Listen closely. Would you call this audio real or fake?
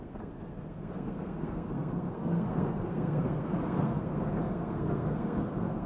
fake